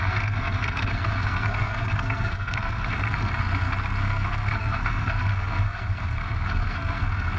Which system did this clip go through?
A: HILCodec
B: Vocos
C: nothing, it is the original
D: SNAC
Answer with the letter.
D